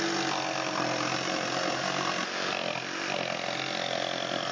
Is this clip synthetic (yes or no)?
no